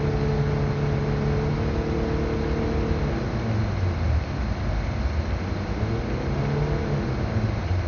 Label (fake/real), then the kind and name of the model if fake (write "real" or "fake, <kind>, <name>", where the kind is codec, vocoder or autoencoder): real